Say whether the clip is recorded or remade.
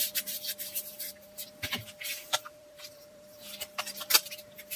remade